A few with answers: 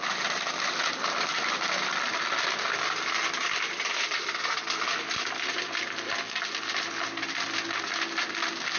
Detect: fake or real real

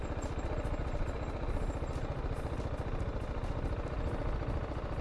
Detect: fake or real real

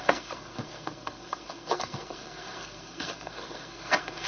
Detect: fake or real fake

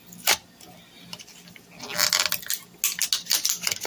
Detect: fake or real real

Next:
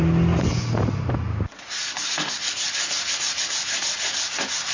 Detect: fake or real real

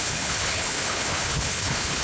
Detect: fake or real fake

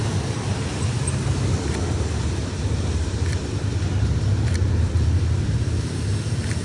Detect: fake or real fake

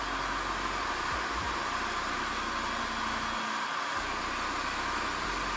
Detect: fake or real real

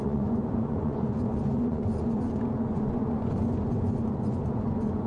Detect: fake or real fake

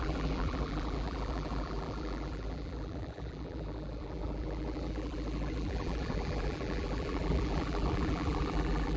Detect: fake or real fake